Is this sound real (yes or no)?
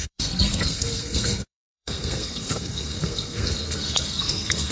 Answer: no